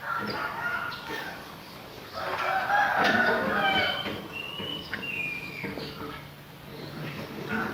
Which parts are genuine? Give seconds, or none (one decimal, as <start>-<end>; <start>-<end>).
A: 0.0-0.4; 2.4-2.9; 3.5-4.7; 6.2-6.7